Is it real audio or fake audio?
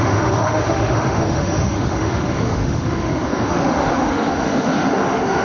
fake